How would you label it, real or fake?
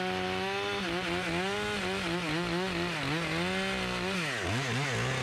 real